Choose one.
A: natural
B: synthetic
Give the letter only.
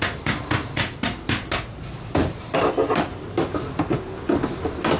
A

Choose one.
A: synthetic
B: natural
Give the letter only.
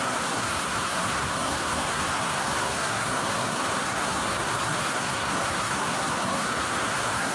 A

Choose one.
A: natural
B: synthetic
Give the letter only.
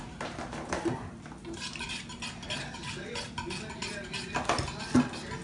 A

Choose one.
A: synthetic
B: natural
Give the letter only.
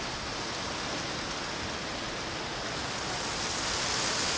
B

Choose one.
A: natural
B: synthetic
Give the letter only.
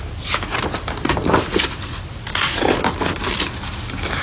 A